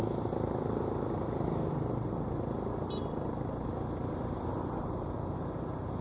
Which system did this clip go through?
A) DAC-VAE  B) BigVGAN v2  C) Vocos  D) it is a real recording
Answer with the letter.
D